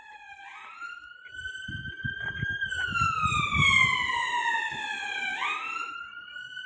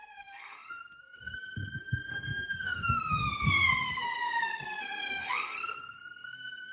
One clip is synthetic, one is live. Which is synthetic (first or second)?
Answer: second